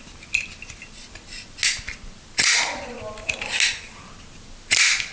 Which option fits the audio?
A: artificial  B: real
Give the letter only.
B